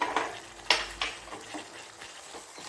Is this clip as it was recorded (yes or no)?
yes